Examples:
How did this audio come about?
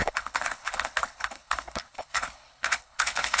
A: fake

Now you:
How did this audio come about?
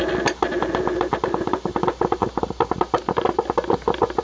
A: real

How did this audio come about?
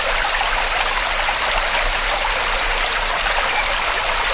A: real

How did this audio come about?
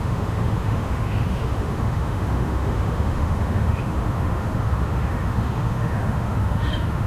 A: fake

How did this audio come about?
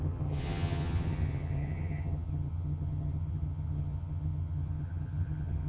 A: fake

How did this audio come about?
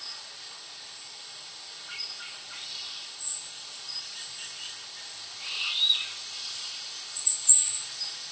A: real